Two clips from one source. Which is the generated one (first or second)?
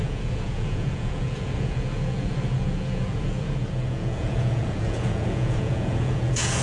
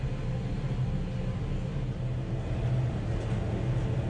first